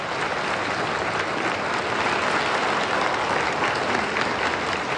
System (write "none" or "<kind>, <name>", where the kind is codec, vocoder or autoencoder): none